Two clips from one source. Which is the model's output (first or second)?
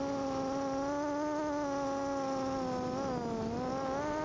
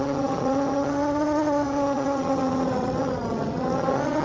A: second